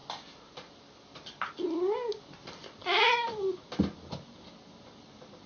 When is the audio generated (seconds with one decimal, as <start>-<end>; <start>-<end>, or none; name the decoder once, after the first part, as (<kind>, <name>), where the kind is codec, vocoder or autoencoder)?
none